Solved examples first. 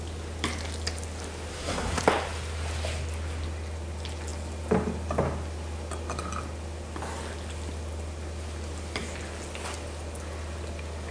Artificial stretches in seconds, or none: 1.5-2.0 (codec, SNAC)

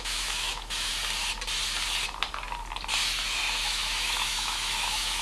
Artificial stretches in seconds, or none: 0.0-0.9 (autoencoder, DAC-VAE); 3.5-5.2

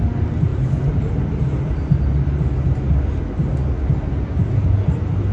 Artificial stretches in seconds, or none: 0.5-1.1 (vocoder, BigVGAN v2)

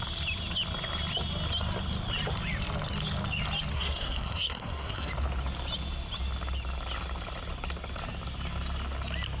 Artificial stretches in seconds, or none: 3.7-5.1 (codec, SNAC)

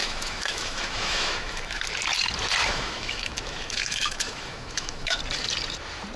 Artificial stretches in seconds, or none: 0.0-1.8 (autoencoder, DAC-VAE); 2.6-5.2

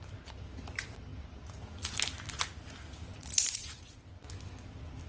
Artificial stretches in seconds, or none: 3.2-4.0 (vocoder, Vocos)

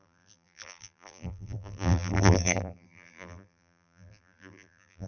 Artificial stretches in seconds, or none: 0.0-5.1 (vocoder, BigVGAN v2)

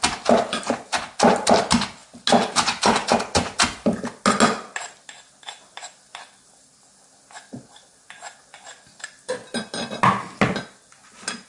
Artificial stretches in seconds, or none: none